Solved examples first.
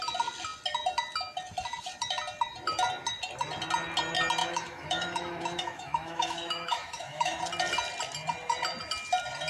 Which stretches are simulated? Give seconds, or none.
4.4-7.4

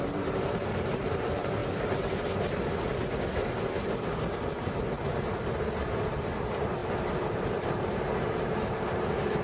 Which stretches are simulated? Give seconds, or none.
0.0-1.6; 6.1-9.4

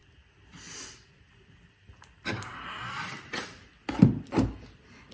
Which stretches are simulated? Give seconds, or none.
none

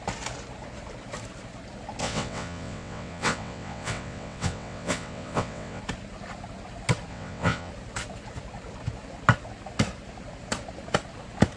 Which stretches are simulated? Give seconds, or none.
2.0-5.8; 7.1-7.7

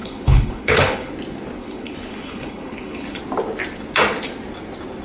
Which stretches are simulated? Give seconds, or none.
0.0-1.1; 1.6-3.2

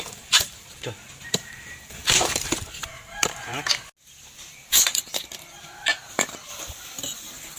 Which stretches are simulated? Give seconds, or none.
0.0-3.5; 5.6-7.6

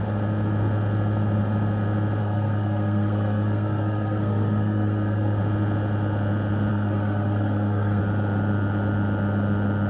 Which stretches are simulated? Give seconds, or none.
2.2-5.4; 6.7-8.0

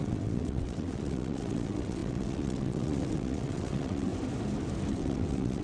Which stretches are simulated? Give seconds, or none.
0.0-4.1; 4.9-5.6